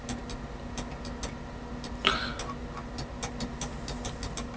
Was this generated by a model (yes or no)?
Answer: no